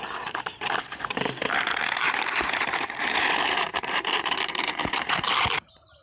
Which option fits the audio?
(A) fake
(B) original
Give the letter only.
A